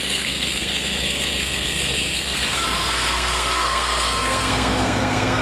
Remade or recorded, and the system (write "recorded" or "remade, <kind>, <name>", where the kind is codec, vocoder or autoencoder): remade, codec, SNAC